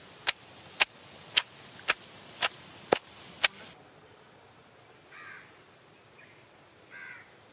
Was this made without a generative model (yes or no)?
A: yes